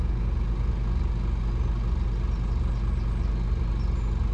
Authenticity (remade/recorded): recorded